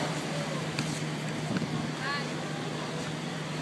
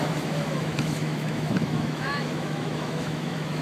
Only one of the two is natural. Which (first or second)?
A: first